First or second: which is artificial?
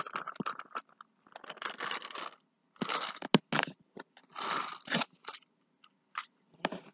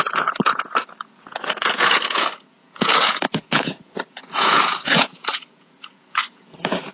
second